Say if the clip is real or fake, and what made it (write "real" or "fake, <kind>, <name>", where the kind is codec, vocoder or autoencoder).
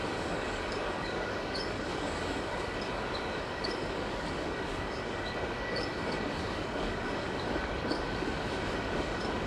fake, codec, DAC